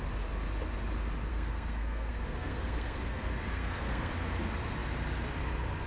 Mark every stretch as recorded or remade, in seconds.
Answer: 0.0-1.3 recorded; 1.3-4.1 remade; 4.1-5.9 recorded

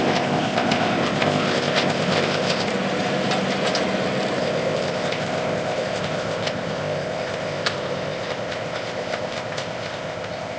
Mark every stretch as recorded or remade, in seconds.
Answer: 0.0-2.7 remade; 2.7-4.4 recorded; 4.4-10.6 remade

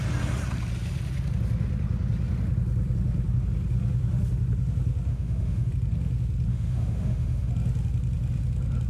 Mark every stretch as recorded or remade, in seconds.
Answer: 0.0-5.1 recorded; 5.1-5.7 remade; 5.7-6.5 recorded; 6.5-7.5 remade; 7.5-8.9 recorded